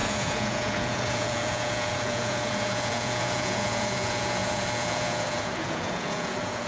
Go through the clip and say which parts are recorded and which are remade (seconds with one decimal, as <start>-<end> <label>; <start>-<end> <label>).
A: 0.0-6.7 remade